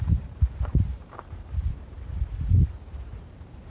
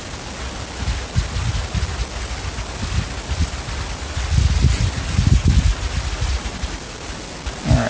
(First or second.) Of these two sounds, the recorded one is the second